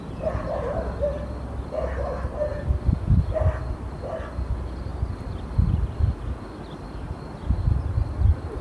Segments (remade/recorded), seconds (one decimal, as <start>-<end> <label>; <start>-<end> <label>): 0.0-8.6 recorded